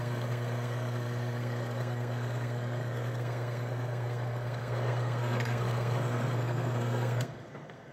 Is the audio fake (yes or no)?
yes